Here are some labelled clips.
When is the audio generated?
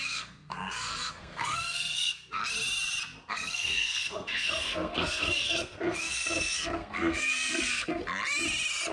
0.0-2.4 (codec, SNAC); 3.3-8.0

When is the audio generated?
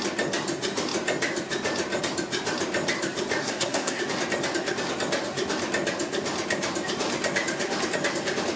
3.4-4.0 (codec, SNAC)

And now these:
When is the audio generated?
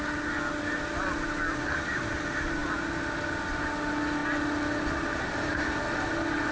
none